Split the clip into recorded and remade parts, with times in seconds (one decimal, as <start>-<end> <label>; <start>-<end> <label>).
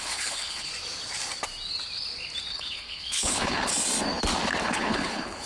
0.0-0.7 remade; 0.7-2.5 recorded; 2.5-3.7 remade; 3.7-4.6 recorded; 4.6-5.5 remade